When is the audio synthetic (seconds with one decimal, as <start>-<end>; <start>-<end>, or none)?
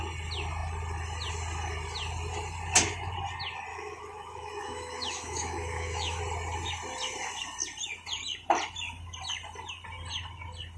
3.7-6.2